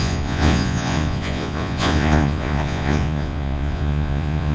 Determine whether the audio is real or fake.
fake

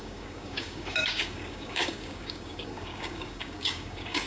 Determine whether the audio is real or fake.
fake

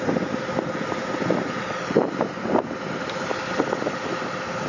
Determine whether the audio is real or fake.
real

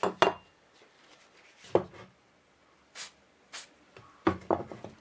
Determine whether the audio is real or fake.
real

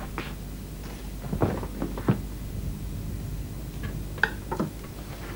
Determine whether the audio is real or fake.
real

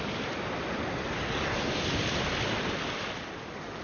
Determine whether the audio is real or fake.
real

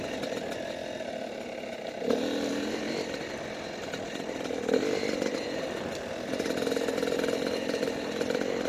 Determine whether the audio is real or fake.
real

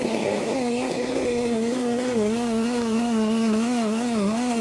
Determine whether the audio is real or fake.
fake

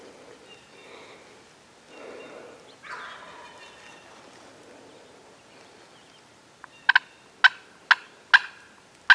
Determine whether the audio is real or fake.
real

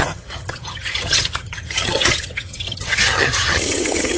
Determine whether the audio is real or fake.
fake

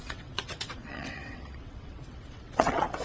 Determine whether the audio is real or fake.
fake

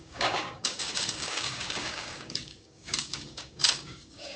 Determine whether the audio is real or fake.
fake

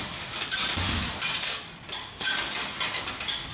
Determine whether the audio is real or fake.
real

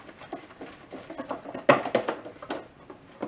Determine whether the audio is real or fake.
real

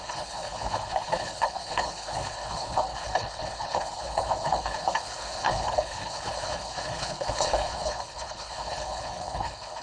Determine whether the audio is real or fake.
fake